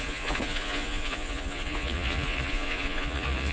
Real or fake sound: fake